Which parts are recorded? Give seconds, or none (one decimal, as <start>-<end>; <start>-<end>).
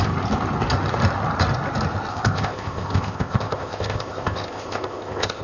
0.0-2.1